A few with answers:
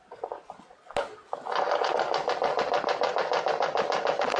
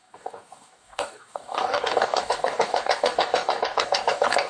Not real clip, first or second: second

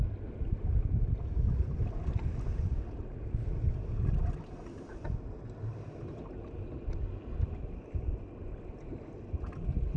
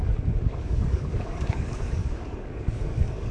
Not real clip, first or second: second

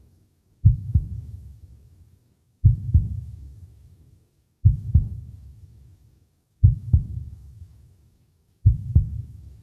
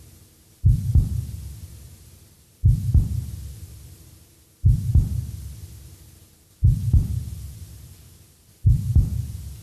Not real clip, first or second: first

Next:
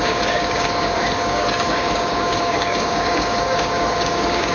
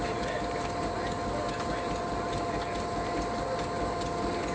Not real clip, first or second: first